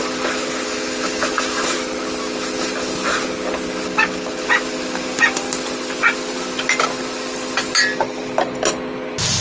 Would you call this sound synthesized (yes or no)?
no